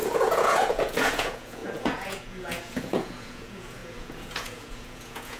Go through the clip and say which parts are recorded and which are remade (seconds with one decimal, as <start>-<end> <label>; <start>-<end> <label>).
0.0-5.4 remade